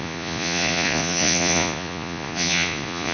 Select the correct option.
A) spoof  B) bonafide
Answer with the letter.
A